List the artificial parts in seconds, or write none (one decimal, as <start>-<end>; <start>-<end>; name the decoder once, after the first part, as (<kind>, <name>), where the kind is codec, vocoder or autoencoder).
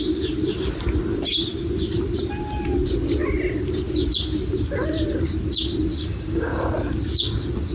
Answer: 6.0-6.6 (codec, DAC)